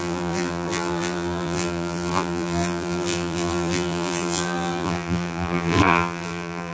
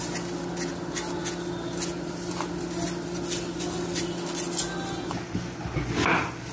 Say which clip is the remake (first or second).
first